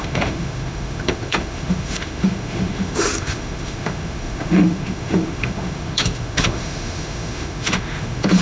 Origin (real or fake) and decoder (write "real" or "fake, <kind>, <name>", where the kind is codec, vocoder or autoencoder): fake, autoencoder, DAC-VAE